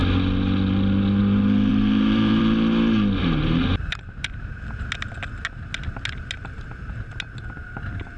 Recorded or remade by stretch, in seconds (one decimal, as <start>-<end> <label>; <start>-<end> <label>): 0.0-1.7 recorded; 1.7-2.4 remade; 2.4-3.2 recorded; 3.2-4.6 remade; 4.6-8.2 recorded